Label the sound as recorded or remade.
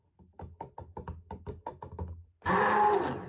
recorded